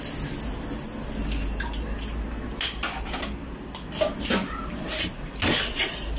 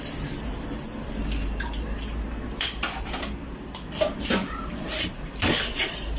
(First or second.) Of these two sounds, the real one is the first